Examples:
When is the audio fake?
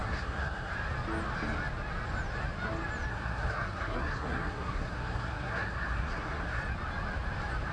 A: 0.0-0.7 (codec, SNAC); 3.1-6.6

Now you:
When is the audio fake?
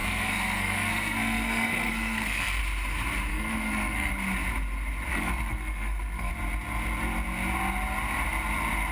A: 0.0-2.6 (codec, SNAC); 3.3-4.1; 5.1-6.3